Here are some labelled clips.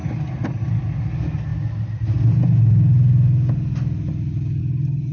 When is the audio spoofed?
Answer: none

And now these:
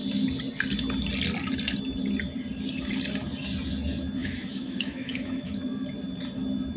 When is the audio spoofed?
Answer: 4.2-5.6 (autoencoder, DAC-VAE)

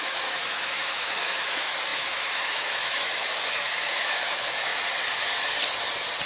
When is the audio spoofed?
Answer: 0.0-4.7 (autoencoder, DAC-VAE)